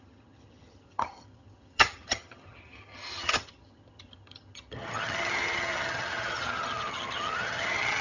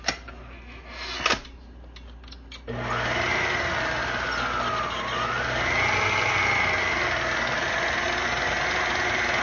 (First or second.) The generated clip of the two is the first